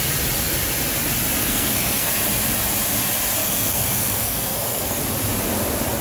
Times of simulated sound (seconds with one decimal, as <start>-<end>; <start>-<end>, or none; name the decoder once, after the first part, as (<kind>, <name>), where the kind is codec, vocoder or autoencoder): 1.4-2.1 (codec, SNAC); 3.4-5.0